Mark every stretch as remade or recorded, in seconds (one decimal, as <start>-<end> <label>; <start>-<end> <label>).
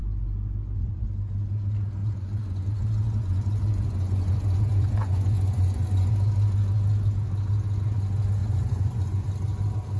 0.0-2.0 recorded; 2.0-6.1 remade; 6.1-8.4 recorded; 8.4-9.3 remade; 9.3-10.0 recorded